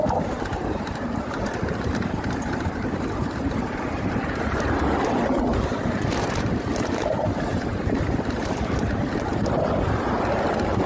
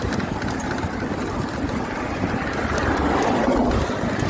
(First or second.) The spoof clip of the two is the first